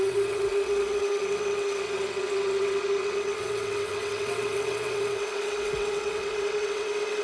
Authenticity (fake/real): fake